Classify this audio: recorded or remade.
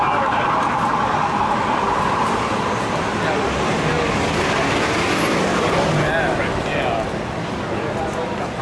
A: recorded